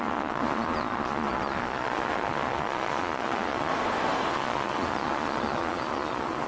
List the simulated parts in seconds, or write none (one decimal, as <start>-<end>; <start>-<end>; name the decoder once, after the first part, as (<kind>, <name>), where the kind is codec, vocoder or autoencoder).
0.0-3.7 (vocoder, Vocos); 4.3-6.5